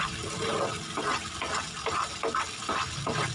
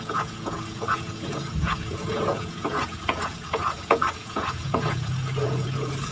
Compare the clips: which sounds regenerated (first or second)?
second